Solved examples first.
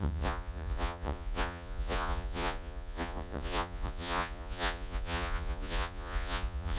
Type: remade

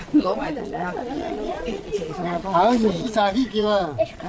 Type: remade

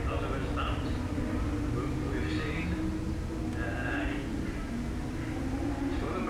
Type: recorded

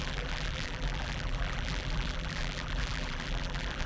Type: remade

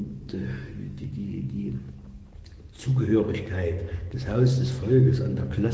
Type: remade